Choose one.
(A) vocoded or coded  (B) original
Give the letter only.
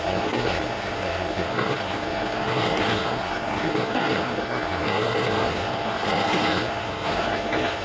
A